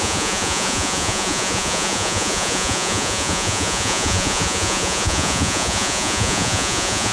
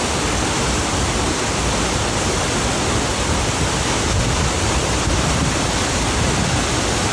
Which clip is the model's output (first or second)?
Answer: first